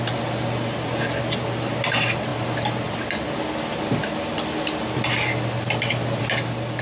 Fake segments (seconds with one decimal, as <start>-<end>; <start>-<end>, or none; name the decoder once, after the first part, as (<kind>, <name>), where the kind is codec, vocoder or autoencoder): none

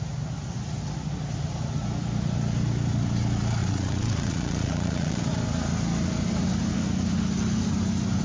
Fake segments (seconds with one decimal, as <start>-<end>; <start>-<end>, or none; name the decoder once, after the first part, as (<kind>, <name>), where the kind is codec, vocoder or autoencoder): 3.6-5.2 (vocoder, Vocos)